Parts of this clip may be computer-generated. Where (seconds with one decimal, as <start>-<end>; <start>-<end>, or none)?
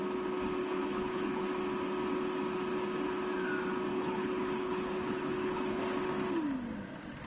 0.6-1.4; 3.9-5.8